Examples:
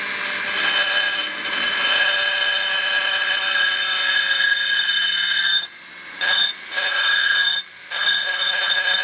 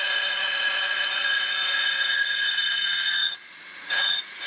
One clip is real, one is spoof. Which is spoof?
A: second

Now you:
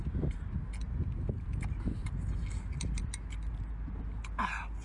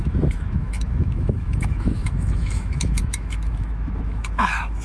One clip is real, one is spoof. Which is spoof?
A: second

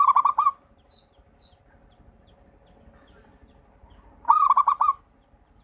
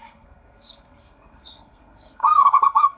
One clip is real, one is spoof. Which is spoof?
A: second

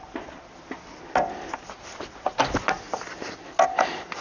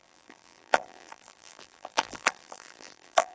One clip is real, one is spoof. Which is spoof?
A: second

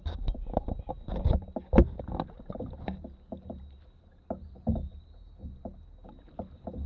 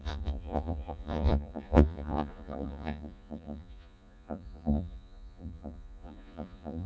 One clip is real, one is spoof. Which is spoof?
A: second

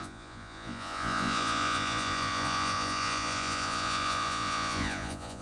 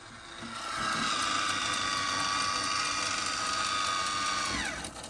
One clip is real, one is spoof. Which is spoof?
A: first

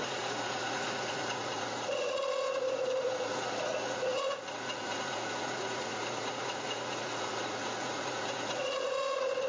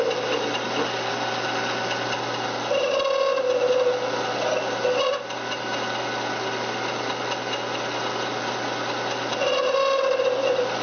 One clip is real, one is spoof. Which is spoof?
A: first